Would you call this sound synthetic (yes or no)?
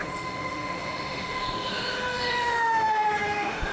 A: yes